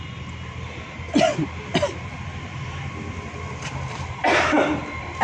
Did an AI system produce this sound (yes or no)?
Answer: no